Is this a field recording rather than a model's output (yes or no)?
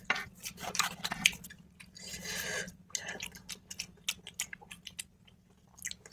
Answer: yes